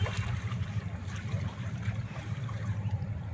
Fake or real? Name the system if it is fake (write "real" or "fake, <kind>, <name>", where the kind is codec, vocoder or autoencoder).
fake, vocoder, BigVGAN v2